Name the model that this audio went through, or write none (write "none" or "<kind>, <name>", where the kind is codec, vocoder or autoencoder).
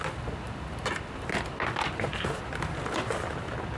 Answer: none